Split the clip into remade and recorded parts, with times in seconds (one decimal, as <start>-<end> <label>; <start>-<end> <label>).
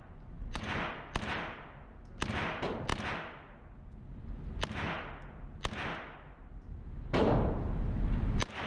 0.0-0.9 remade; 0.9-8.7 recorded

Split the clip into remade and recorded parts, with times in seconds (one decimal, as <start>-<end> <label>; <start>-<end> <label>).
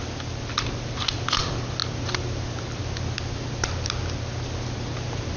0.0-5.4 recorded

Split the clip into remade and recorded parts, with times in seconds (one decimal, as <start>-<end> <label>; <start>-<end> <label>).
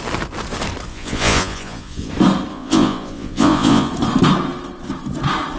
0.0-0.9 recorded; 0.9-2.1 remade; 2.1-2.5 recorded; 2.5-3.9 remade; 3.9-5.6 recorded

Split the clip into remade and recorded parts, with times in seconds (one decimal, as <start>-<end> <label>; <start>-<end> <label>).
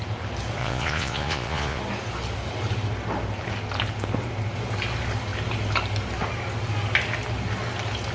0.0-0.6 recorded; 0.6-1.8 remade; 1.8-8.1 recorded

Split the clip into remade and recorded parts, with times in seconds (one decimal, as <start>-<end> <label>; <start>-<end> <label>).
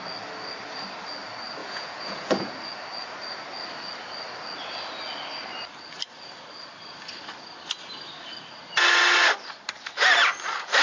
0.0-1.6 recorded; 1.6-2.5 remade; 2.5-10.8 recorded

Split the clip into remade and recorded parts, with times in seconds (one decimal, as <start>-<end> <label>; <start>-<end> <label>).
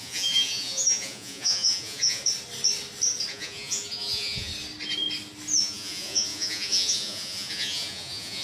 0.0-2.2 remade; 2.2-3.3 recorded; 3.3-4.5 remade; 4.5-5.6 recorded; 5.6-8.4 remade